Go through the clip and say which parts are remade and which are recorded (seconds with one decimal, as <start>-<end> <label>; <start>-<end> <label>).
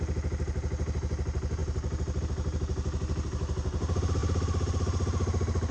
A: 0.0-5.7 recorded